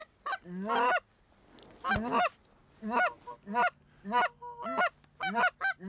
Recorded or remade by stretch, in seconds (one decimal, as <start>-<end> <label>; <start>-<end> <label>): 0.0-5.9 recorded